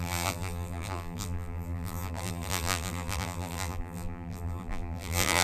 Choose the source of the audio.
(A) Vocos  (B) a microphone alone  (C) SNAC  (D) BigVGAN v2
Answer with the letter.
D